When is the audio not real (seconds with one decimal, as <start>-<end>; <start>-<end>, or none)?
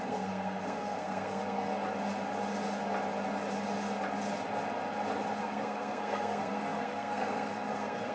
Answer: 0.0-1.7; 5.4-8.1